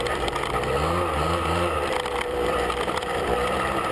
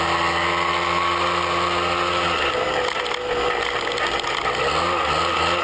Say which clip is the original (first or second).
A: second